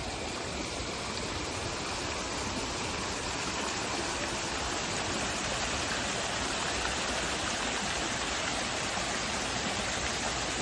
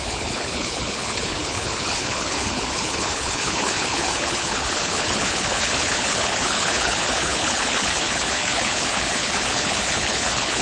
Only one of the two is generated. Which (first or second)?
second